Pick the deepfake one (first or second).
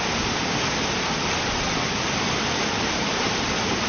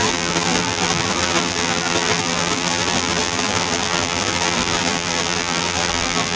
second